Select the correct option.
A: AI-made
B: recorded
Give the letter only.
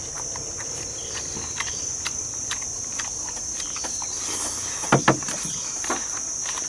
A